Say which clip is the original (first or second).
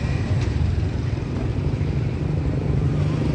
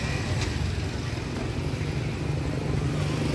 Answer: second